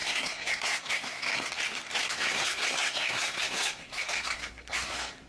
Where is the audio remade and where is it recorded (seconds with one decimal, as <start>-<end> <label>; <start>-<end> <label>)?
0.0-1.5 remade; 1.5-2.0 recorded; 2.0-5.3 remade